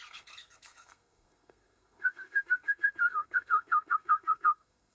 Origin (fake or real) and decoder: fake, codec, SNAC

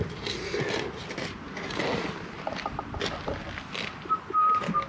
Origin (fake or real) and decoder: real